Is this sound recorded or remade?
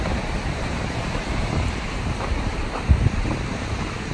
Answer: remade